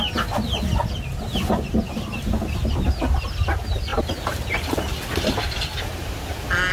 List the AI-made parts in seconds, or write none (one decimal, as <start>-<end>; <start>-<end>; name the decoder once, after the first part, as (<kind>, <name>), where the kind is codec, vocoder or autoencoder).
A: 3.9-4.7 (vocoder, BigVGAN v2)